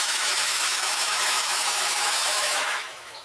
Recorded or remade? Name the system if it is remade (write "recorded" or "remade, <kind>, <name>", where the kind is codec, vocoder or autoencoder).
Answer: remade, autoencoder, DAC-VAE